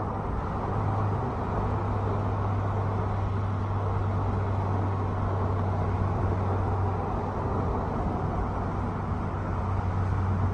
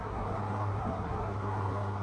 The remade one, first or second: second